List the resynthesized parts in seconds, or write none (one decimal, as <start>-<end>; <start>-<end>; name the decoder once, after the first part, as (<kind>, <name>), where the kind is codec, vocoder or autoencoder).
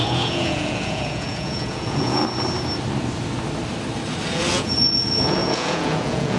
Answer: 0.0-2.2 (vocoder, Vocos); 4.3-6.4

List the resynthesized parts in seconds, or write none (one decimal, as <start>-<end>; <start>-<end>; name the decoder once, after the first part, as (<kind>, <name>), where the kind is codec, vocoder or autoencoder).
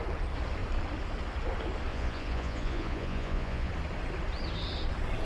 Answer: 1.9-3.7 (vocoder, Vocos)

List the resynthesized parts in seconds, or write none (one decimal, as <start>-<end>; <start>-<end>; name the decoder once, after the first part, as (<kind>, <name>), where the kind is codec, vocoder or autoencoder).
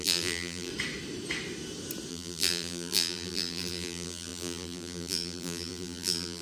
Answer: 0.0-0.7 (vocoder, BigVGAN v2); 2.1-6.4